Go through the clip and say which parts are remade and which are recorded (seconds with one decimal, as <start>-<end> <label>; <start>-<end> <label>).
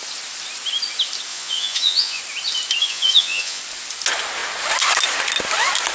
0.0-1.3 recorded; 1.3-2.2 remade; 2.2-2.8 recorded; 2.8-3.6 remade; 3.6-5.9 recorded